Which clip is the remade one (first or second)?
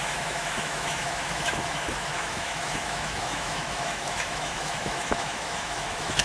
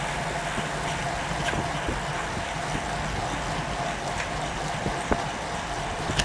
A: first